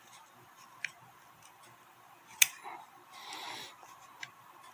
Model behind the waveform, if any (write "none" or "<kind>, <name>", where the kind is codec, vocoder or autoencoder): vocoder, BigVGAN v2